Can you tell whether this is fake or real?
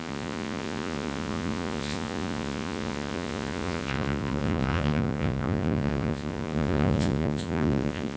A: fake